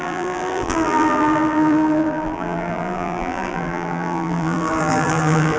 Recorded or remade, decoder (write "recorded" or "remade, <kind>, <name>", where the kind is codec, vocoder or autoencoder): remade, vocoder, BigVGAN v2